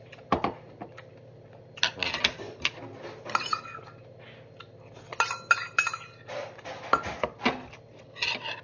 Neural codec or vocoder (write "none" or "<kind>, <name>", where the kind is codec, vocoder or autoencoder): none